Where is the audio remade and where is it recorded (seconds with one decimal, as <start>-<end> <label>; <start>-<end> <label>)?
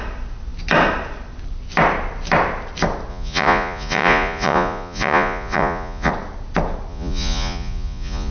0.0-3.1 recorded; 3.1-6.1 remade; 6.1-6.9 recorded; 6.9-8.3 remade